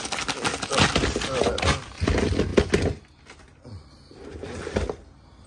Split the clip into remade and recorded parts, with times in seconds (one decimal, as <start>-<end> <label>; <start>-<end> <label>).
0.0-5.5 recorded